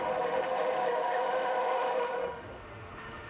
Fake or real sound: fake